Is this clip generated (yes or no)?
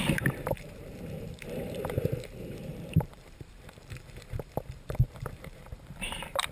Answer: yes